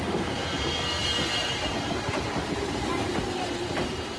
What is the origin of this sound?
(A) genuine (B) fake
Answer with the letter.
B